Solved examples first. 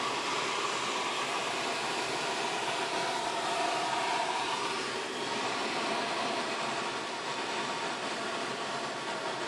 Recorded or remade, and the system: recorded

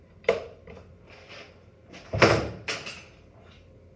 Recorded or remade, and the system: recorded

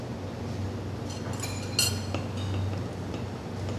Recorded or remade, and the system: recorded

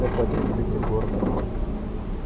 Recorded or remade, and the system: recorded